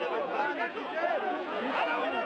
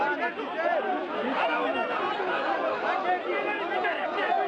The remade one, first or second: first